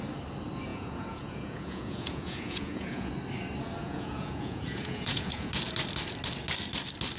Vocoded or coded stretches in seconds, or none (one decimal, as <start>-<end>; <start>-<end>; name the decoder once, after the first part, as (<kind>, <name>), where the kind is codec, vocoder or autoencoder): 0.7-3.1 (vocoder, Vocos); 3.8-5.5